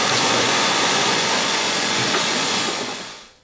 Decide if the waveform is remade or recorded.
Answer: remade